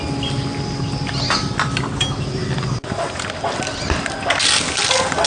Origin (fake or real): real